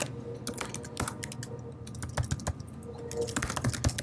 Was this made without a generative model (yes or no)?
yes